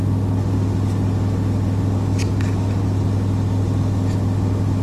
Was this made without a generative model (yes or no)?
yes